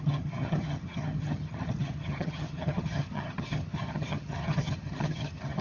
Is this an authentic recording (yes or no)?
no